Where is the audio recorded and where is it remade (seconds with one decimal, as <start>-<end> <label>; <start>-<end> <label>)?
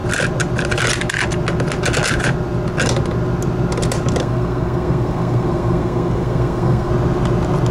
0.0-4.2 recorded; 4.2-6.9 remade; 6.9-7.7 recorded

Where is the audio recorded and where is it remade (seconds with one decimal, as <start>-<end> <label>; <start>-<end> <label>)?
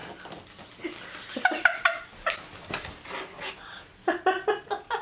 0.0-5.0 recorded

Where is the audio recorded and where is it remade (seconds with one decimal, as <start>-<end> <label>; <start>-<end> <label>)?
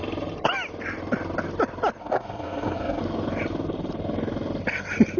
0.0-2.0 recorded; 2.0-3.0 remade; 3.0-5.2 recorded